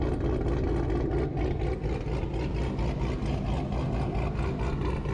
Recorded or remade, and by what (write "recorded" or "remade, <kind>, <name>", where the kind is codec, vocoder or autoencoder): recorded